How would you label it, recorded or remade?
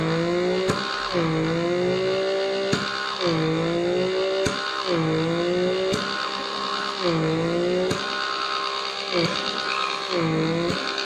recorded